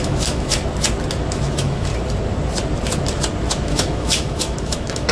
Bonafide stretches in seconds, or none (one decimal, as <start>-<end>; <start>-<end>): 0.6-1.3; 1.9-3.5